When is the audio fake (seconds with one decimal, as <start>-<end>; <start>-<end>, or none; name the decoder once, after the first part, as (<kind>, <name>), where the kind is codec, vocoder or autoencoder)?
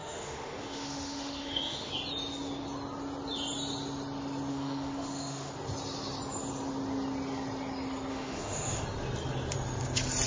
0.0-1.9 (autoencoder, DAC-VAE); 4.5-5.5; 8.1-8.8